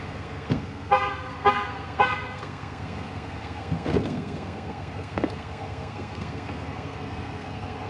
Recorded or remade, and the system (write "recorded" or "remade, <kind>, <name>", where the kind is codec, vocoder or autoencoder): remade, codec, SNAC